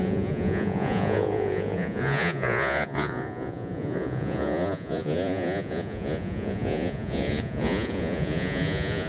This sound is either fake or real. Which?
fake